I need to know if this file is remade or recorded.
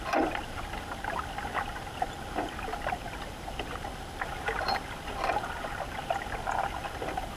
recorded